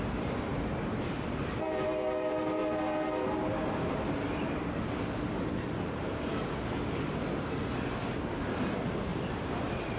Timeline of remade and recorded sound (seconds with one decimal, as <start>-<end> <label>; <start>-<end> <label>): 0.0-10.0 recorded